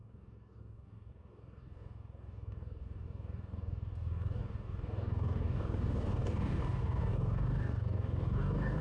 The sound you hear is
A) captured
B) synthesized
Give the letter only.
B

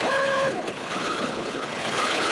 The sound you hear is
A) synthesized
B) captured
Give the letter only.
A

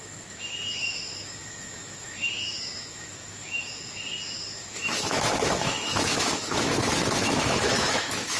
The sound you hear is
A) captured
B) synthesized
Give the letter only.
B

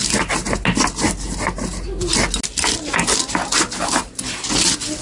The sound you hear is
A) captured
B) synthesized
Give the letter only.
A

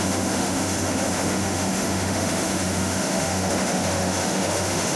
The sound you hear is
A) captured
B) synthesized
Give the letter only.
B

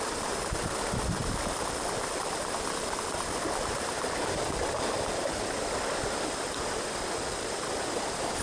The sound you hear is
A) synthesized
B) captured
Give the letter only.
B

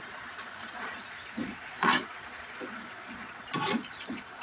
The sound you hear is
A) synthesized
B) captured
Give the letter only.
A